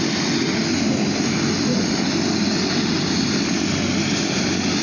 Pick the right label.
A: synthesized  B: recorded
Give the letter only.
B